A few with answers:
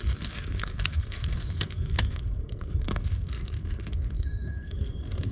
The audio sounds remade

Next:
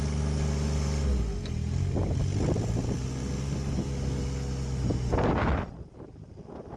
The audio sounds recorded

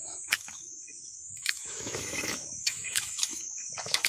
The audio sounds remade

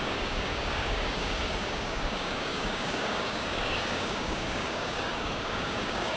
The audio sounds remade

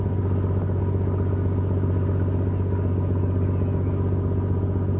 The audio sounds recorded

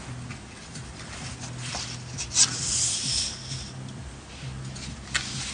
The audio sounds recorded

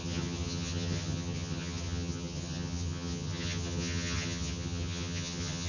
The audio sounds remade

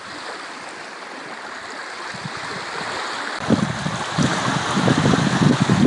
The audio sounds recorded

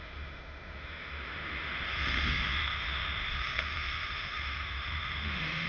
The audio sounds remade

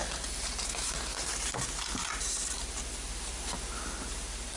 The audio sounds recorded